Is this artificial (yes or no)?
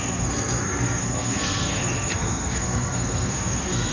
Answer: yes